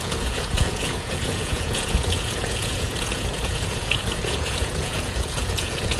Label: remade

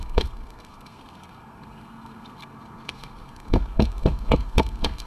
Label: remade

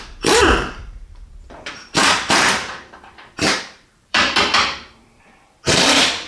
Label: remade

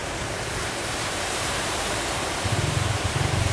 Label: remade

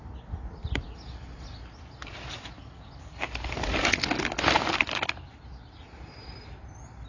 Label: recorded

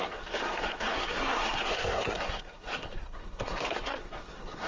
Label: remade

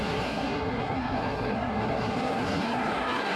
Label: remade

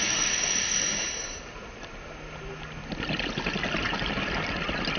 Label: recorded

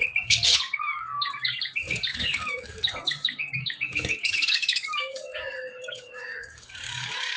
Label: remade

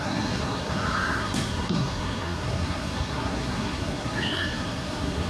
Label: remade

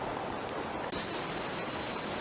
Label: recorded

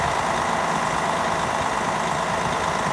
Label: recorded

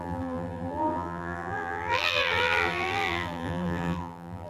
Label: remade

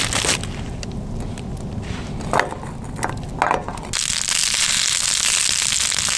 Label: recorded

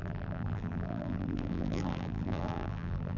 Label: remade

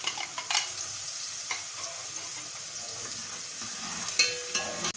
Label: recorded